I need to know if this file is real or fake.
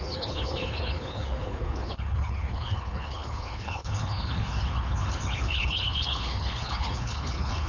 fake